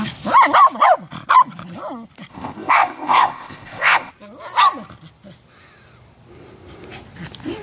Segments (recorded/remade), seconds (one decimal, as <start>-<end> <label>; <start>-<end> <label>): 0.0-2.3 recorded; 2.3-4.1 remade; 4.1-7.6 recorded